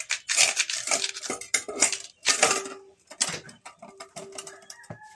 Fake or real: real